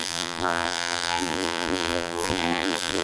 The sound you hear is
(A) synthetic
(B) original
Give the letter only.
A